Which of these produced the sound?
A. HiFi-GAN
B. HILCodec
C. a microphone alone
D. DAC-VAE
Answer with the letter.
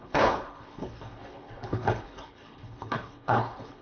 B